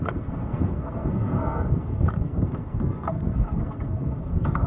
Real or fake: fake